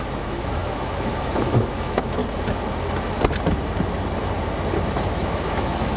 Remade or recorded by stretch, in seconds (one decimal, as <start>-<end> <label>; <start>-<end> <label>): 0.0-2.2 remade; 2.2-5.1 recorded; 5.1-6.0 remade